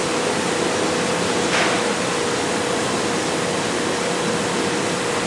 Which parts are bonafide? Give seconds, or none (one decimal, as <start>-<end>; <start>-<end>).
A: 0.0-5.3